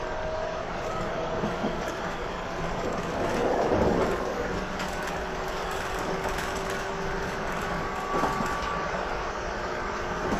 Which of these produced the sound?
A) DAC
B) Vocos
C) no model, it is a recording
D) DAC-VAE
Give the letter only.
A